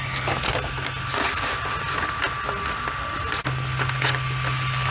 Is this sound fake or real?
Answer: real